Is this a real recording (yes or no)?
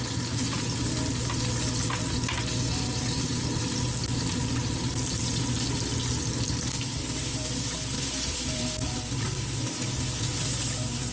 yes